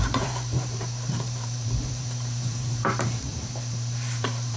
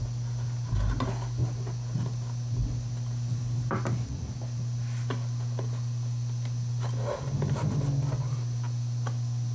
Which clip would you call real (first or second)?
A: second